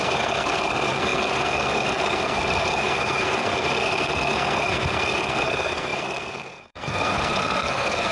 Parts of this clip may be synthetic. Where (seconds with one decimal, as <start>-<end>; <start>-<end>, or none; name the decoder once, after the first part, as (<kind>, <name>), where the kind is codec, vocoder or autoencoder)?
0.0-8.1 (codec, SNAC)